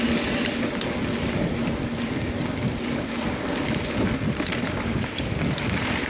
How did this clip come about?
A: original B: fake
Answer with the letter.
A